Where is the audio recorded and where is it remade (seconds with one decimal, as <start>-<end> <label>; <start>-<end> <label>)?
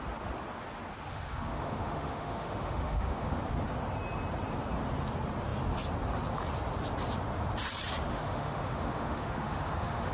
0.0-1.1 recorded; 1.1-3.4 remade; 3.4-8.1 recorded; 8.1-10.1 remade